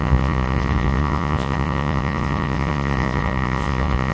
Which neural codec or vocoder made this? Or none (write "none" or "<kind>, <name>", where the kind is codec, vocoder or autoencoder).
vocoder, Vocos